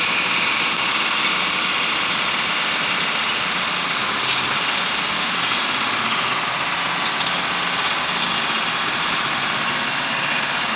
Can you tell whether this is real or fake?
real